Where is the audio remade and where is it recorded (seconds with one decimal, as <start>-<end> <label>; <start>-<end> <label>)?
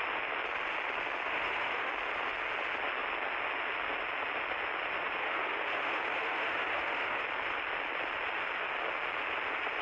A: 0.0-1.3 recorded; 1.3-1.9 remade; 1.9-5.2 recorded; 5.2-7.2 remade; 7.2-9.8 recorded